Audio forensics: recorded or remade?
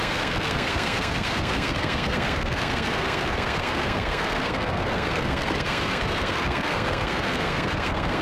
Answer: remade